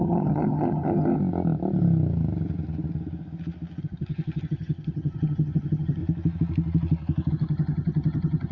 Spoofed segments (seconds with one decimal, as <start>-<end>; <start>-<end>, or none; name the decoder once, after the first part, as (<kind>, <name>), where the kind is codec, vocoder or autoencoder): 0.0-1.2 (vocoder, HiFi-GAN); 3.8-6.0; 7.3-8.5